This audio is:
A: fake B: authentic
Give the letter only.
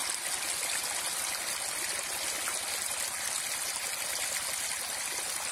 B